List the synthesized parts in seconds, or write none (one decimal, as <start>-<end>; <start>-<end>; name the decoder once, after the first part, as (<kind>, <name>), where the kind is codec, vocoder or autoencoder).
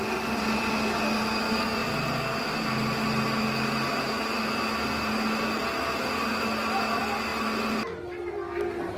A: none